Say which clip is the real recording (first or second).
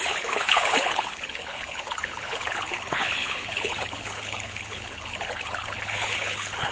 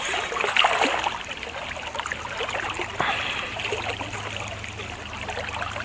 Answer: second